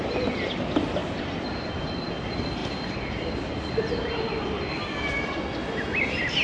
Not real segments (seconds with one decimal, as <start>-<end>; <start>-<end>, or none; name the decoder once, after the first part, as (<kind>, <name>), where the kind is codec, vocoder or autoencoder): none